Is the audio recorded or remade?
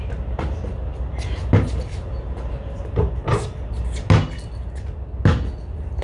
recorded